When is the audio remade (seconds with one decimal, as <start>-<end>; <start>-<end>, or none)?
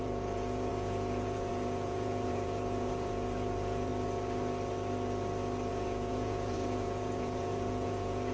0.0-3.9; 5.7-8.3